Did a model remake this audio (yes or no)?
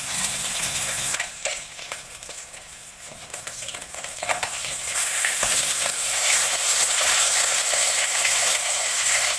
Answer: yes